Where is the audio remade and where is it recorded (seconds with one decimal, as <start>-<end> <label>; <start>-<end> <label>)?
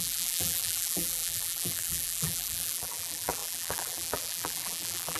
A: 0.0-5.2 remade